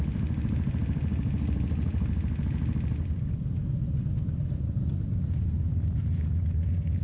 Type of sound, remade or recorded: recorded